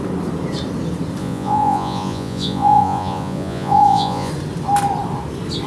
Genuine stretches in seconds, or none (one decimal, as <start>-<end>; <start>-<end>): 0.0-1.2; 4.3-5.7